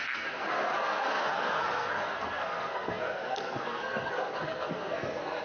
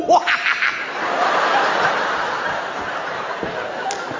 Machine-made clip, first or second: first